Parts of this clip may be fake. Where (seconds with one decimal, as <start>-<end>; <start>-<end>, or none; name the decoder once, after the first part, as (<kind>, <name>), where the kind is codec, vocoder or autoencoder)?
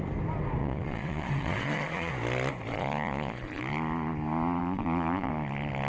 0.6-2.1 (vocoder, Vocos); 2.7-3.6; 4.6-5.3